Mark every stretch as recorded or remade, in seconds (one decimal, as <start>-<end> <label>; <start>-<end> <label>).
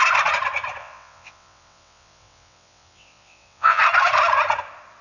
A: 0.0-0.8 recorded; 0.8-3.8 remade; 3.8-5.0 recorded